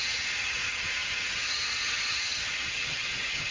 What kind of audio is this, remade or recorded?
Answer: remade